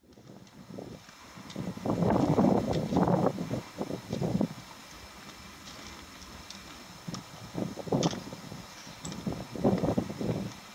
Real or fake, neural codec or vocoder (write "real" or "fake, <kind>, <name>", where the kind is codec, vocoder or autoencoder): real